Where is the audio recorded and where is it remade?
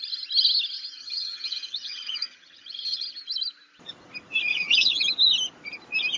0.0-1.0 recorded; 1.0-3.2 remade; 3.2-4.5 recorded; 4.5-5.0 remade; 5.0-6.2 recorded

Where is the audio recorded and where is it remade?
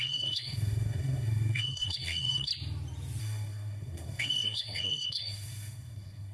0.0-2.5 remade; 2.5-3.2 recorded; 3.2-6.3 remade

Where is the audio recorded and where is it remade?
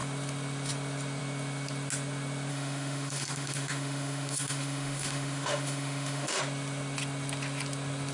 0.0-2.5 recorded; 2.5-6.4 remade; 6.4-8.1 recorded